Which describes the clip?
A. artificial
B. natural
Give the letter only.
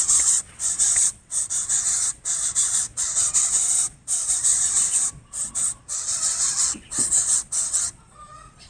A